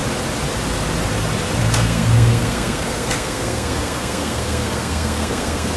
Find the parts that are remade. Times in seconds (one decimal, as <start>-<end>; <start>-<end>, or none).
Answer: 1.6-5.8